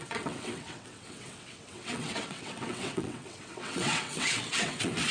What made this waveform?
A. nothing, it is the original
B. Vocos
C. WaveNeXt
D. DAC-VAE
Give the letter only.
C